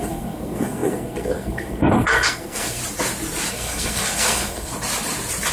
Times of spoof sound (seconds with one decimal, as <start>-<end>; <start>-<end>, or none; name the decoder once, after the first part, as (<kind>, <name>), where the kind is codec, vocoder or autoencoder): 0.0-2.8 (codec, SNAC); 3.5-4.7